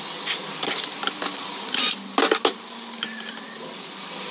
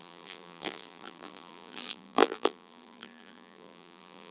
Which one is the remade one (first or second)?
second